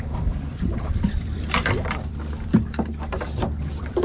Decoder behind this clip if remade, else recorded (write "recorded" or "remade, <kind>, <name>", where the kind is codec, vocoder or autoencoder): remade, vocoder, BigVGAN v2